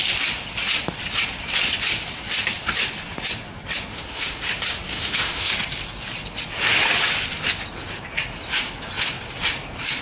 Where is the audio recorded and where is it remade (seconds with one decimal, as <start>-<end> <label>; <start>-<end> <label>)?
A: 0.0-3.9 recorded; 3.9-4.5 remade; 4.5-4.9 recorded; 4.9-5.5 remade; 5.5-10.0 recorded